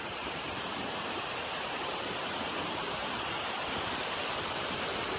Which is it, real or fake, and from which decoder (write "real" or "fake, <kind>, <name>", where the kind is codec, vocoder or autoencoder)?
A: fake, vocoder, BigVGAN v2